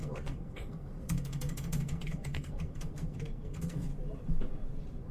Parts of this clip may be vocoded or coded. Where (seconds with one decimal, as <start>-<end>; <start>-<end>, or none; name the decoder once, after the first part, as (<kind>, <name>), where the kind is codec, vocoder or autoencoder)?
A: 0.0-3.9 (codec, SNAC)